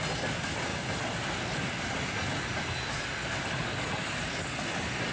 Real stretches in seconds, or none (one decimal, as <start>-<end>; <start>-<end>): 0.0-5.1